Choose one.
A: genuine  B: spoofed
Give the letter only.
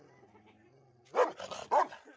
A